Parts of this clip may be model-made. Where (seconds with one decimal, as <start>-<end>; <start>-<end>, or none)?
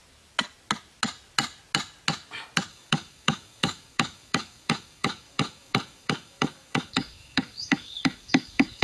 2.7-8.8